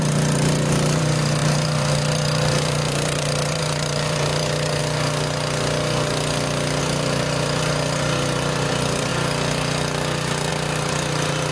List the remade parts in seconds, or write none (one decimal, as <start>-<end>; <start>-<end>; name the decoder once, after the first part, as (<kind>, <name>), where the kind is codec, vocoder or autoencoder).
0.0-4.8 (vocoder, BigVGAN v2); 6.8-9.1; 10.5-11.5